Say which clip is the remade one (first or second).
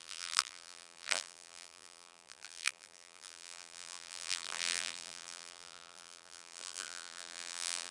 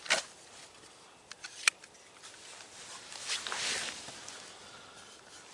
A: first